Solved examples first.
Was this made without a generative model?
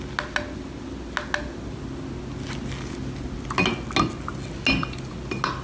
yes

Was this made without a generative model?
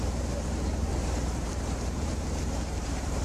no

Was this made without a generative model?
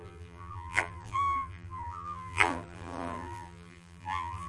no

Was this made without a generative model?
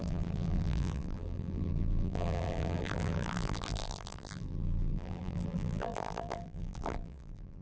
no